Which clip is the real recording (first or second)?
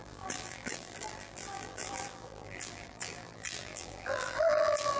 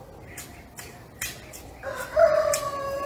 second